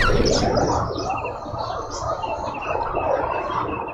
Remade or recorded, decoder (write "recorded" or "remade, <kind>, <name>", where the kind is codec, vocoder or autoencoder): recorded